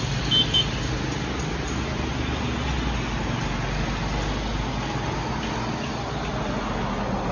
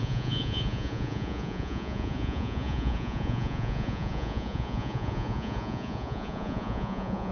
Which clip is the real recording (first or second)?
first